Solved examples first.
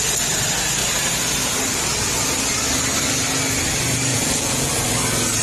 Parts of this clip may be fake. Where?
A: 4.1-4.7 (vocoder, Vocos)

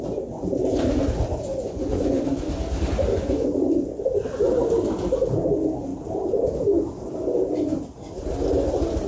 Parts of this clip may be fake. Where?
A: 1.5-2.2 (vocoder, Vocos); 3.1-4.0